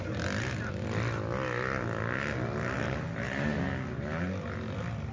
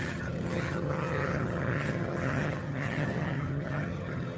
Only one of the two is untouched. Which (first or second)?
first